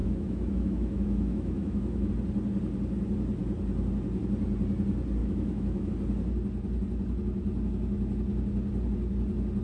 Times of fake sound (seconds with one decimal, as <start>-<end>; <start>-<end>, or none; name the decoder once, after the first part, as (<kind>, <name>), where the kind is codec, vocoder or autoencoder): 0.0-2.1 (autoencoder, DAC-VAE); 5.2-5.9